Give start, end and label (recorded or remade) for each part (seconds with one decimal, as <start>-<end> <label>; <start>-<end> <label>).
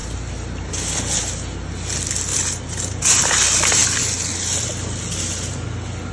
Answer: 0.0-2.3 recorded; 2.3-3.2 remade; 3.2-6.1 recorded